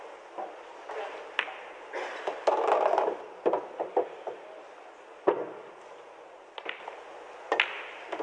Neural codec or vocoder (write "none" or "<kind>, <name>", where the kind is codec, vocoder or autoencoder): none